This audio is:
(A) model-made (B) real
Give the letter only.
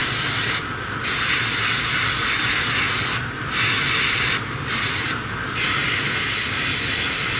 B